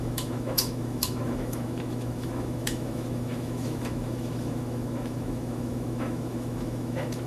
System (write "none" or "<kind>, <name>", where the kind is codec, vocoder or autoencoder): autoencoder, DAC-VAE